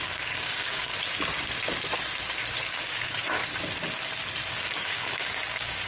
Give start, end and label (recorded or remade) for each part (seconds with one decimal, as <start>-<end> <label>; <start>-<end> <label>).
0.0-0.9 remade; 0.9-2.8 recorded; 2.8-3.4 remade; 3.4-4.5 recorded; 4.5-5.9 remade